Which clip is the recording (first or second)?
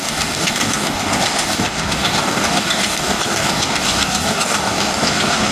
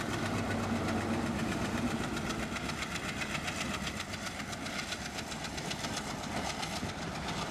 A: second